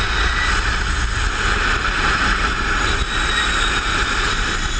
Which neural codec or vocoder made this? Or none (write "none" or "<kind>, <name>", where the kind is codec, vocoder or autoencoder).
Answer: none